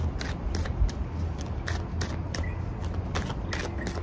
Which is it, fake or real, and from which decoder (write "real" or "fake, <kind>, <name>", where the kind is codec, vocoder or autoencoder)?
real